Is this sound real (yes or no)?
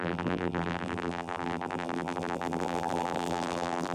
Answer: no